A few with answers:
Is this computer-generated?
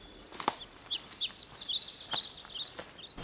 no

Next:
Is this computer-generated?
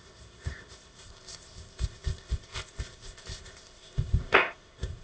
yes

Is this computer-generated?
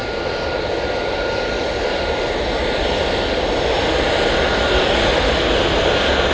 no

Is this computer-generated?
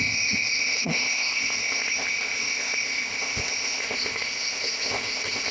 yes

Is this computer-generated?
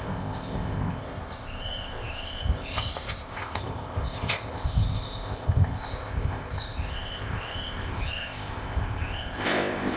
yes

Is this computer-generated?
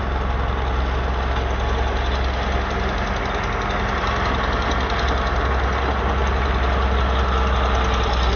no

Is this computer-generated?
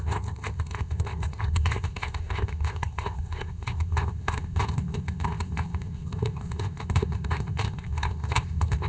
yes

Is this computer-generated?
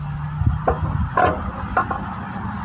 no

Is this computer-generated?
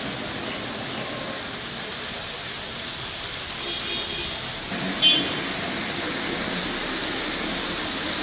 no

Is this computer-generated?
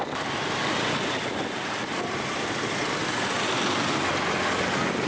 no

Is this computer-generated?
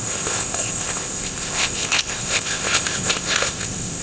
yes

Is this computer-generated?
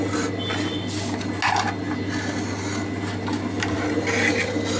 no